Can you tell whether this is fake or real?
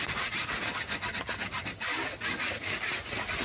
real